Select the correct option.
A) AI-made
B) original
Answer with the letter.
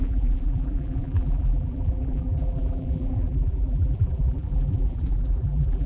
A